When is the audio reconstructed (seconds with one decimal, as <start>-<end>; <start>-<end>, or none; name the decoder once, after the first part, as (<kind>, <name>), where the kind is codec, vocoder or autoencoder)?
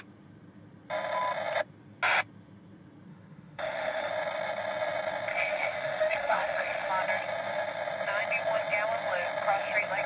3.1-4.1 (autoencoder, DAC-VAE); 5.3-6.9